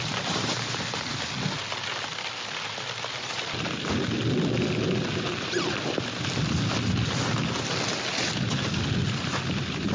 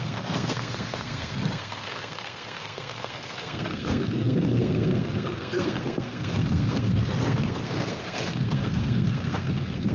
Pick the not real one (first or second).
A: second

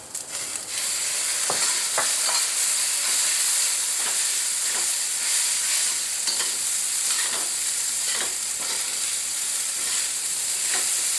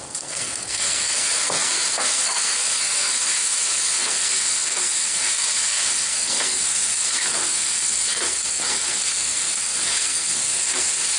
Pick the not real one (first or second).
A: second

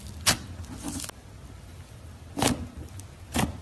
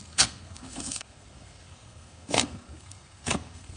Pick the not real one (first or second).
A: second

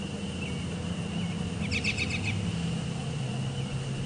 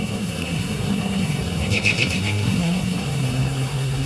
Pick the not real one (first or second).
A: second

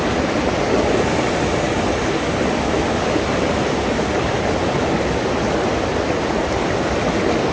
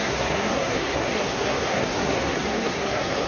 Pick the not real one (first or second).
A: second